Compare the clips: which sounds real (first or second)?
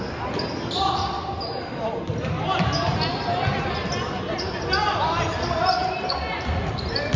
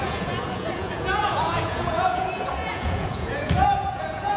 first